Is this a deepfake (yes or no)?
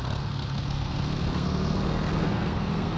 yes